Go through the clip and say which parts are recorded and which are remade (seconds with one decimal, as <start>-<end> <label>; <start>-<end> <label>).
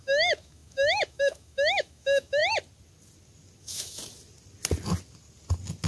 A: 0.0-2.4 remade; 2.4-3.6 recorded; 3.6-4.0 remade; 4.0-5.9 recorded